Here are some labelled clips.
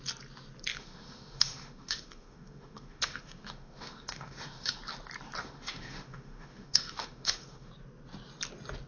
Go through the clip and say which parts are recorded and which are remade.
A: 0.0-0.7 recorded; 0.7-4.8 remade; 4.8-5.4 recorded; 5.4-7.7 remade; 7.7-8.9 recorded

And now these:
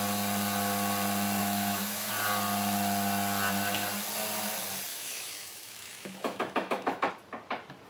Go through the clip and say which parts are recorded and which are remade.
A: 0.0-1.4 recorded; 1.4-2.1 remade; 2.1-4.9 recorded; 4.9-7.1 remade; 7.1-7.9 recorded